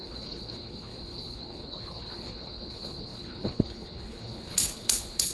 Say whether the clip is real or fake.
fake